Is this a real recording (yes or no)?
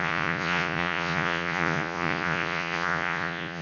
no